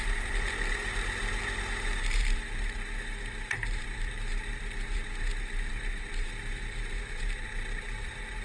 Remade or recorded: remade